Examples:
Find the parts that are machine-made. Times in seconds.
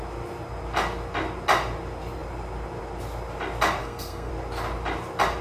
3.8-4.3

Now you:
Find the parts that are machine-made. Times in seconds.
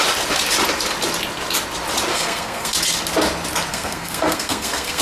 2.1-2.7; 3.7-5.0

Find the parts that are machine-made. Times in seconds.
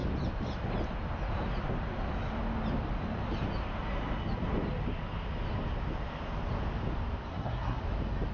7.3-7.8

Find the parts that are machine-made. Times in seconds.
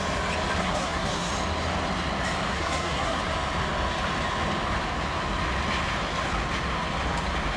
0.6-1.3; 2.5-3.2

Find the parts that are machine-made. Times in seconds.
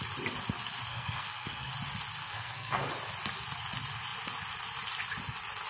0.9-1.7; 2.2-2.9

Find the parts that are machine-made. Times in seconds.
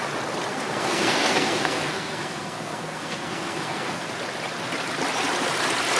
0.5-4.1